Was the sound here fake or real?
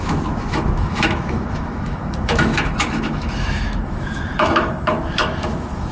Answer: fake